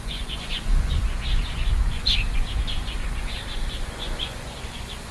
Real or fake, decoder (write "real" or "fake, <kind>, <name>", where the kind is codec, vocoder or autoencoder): fake, vocoder, Vocos